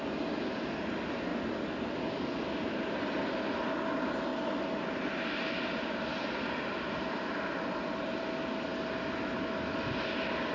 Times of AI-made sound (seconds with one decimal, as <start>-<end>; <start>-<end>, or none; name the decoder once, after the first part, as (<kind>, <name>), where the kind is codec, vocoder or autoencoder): none

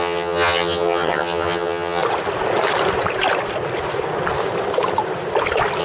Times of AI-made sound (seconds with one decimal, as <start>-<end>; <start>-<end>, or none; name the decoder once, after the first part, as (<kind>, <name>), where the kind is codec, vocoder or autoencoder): 0.0-2.0 (vocoder, HiFi-GAN)

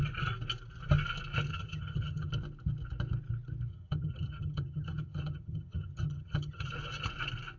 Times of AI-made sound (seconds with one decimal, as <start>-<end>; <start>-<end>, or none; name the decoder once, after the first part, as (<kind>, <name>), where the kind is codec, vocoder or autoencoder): 1.5-2.3 (vocoder, HiFi-GAN); 3.7-6.7

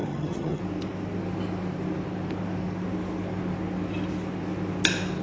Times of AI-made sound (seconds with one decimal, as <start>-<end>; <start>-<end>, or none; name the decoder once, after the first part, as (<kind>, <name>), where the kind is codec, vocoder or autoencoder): 0.0-0.6 (vocoder, HiFi-GAN)

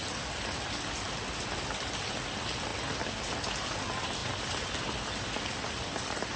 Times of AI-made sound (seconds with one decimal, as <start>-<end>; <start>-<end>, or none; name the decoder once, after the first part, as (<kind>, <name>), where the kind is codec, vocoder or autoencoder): none

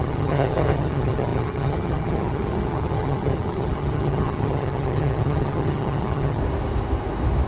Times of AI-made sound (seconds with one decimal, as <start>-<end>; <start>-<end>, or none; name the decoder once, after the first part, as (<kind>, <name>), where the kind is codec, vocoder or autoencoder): 0.0-6.4 (vocoder, HiFi-GAN)

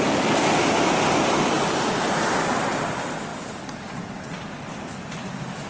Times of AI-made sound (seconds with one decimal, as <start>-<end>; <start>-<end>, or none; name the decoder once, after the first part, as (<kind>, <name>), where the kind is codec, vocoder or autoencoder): none